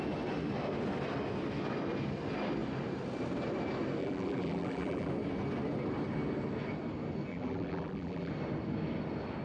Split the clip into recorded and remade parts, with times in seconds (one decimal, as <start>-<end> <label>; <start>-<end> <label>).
0.0-4.0 recorded; 4.0-5.1 remade; 5.1-7.3 recorded; 7.3-8.3 remade; 8.3-9.4 recorded